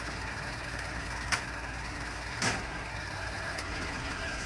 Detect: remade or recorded remade